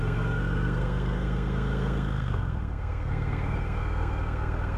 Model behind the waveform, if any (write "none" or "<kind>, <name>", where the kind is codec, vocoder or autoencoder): codec, SNAC